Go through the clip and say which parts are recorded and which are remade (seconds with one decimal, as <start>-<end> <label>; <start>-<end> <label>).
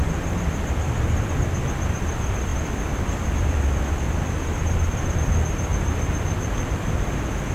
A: 0.0-7.5 recorded